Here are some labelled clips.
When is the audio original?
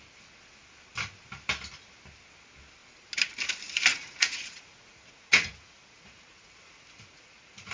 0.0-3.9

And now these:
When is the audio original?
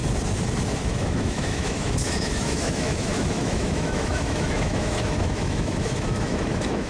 0.0-0.8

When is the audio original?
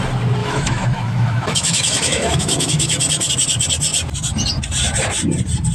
0.0-0.4; 3.3-5.7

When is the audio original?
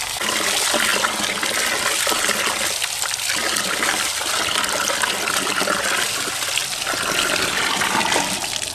0.0-8.7